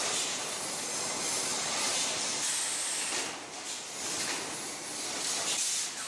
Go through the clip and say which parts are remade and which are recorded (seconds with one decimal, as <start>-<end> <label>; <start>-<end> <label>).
0.0-6.1 recorded